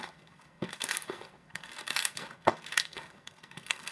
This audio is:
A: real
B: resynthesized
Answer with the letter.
B